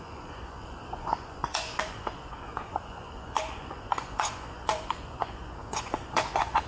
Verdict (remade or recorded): remade